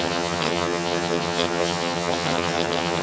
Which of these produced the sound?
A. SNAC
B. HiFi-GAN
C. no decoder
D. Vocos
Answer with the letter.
B